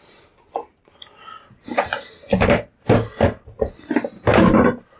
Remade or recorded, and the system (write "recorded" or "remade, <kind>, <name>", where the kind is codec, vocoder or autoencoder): recorded